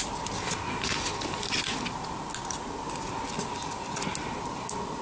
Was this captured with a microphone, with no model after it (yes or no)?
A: yes